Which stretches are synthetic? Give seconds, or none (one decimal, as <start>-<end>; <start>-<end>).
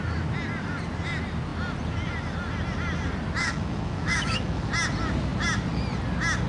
3.4-4.7